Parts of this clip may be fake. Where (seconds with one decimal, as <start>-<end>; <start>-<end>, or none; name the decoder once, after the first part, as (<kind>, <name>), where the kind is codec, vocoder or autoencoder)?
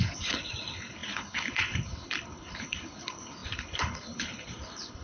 0.0-5.0 (codec, HILCodec)